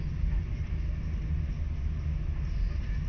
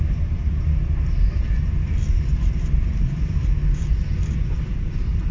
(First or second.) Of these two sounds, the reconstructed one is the second